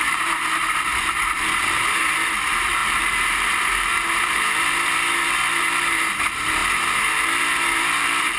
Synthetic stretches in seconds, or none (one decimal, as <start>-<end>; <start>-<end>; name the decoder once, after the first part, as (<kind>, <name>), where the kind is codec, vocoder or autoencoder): 0.0-8.4 (vocoder, BigVGAN v2)